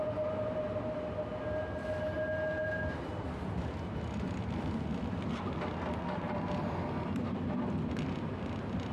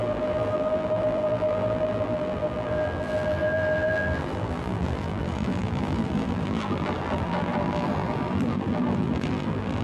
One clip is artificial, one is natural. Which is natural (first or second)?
first